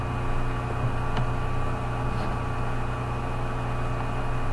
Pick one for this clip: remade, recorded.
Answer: recorded